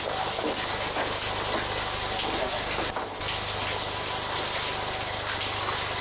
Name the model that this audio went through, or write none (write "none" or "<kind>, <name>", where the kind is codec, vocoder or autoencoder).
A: none